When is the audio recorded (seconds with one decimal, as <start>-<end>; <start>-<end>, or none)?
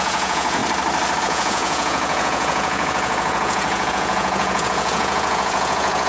0.6-1.2